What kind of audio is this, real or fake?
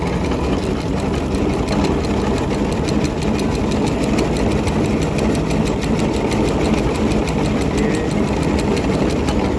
real